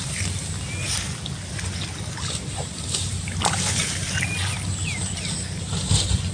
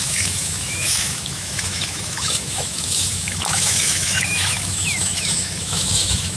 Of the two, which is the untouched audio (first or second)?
first